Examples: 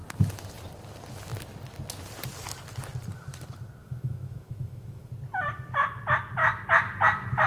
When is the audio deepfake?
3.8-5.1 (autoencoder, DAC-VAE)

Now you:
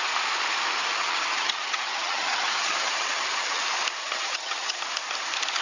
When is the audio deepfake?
0.9-3.6 (vocoder, HiFi-GAN); 4.0-4.8